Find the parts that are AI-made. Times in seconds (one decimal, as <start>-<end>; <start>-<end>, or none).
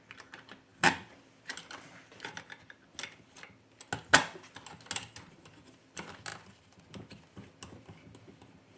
none